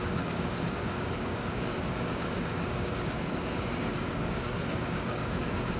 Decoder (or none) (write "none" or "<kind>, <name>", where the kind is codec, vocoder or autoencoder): codec, DAC